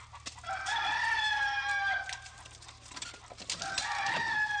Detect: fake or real real